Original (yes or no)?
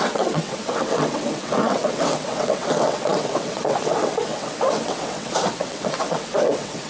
no